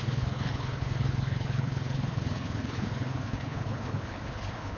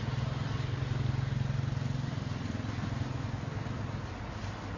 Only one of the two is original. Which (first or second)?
second